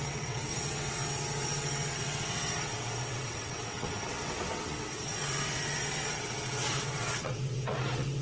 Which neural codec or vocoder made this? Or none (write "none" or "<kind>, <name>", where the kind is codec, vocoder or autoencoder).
vocoder, WaveNeXt